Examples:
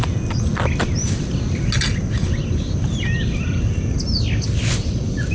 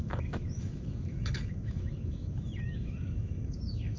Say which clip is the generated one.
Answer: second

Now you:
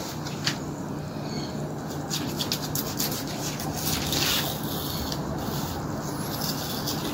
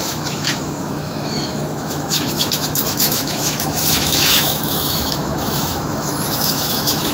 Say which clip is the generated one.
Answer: second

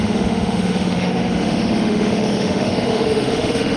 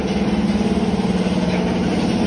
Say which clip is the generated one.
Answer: first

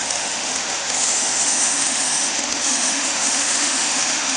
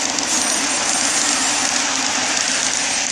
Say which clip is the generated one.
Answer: first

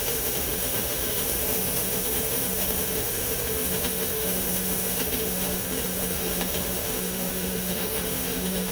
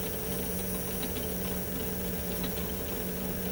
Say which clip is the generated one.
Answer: first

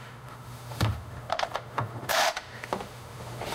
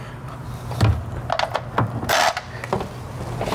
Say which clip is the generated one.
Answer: first